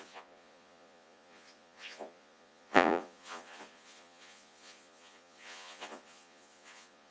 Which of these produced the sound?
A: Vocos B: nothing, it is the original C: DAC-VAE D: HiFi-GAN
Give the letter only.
A